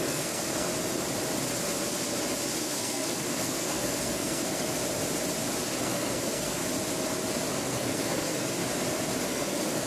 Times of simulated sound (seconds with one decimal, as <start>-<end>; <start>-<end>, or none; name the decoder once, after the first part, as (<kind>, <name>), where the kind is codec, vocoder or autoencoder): 0.0-0.7 (codec, SNAC); 2.6-4.8; 5.8-6.6; 7.5-8.6; 9.3-9.9